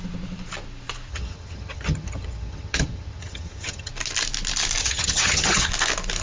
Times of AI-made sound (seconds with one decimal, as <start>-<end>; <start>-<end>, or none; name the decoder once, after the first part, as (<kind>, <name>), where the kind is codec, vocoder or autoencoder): 1.1-3.9 (vocoder, HiFi-GAN); 4.8-5.7